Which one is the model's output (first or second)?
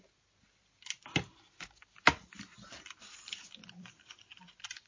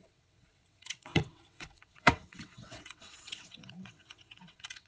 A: second